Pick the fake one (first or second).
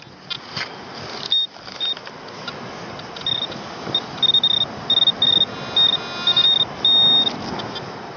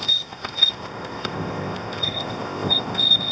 second